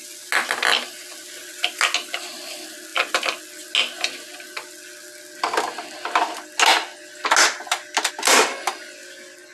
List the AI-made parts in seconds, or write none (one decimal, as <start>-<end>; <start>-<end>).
none